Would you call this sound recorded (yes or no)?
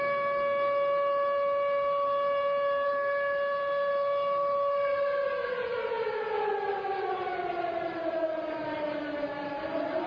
yes